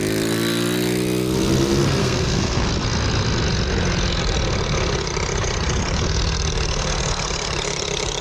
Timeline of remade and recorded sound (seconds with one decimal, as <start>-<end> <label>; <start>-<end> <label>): 0.0-2.0 recorded; 2.0-2.7 remade; 2.7-8.2 recorded